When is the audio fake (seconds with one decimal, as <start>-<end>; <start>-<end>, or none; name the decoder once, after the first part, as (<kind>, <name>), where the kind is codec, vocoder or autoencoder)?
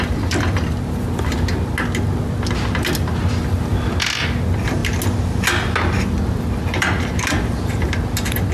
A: none